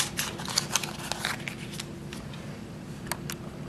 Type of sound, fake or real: real